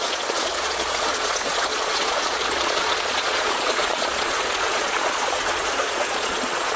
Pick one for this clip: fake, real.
fake